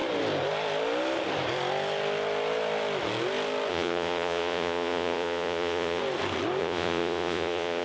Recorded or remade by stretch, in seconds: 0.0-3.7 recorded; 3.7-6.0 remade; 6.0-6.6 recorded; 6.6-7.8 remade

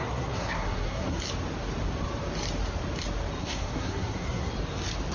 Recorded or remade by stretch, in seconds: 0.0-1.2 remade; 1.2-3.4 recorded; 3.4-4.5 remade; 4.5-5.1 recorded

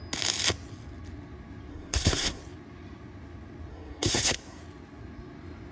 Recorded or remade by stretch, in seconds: 0.0-1.7 recorded; 1.7-2.4 remade; 2.4-3.7 recorded; 3.7-4.6 remade; 4.6-5.7 recorded

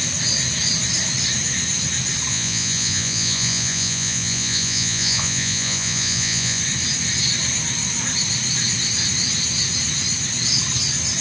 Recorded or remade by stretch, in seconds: 0.0-2.3 recorded; 2.3-6.6 remade; 6.6-11.2 recorded

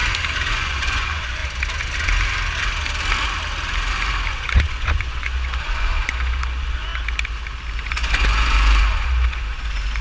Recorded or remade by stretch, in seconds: 0.0-0.5 recorded; 0.5-1.4 remade; 1.4-4.3 recorded; 4.3-6.9 remade; 6.9-7.7 recorded; 7.7-10.0 remade